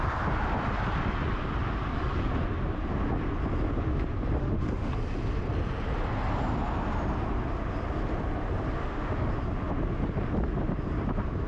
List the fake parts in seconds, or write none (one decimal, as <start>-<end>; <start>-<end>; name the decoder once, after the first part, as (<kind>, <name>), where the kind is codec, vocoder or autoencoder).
4.4-4.9 (autoencoder, DAC-VAE); 8.8-9.3